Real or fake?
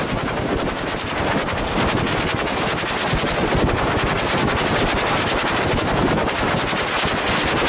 real